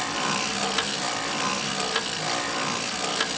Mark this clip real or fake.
real